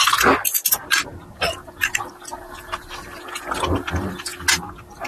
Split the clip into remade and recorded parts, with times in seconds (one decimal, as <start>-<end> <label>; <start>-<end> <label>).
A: 0.0-5.1 recorded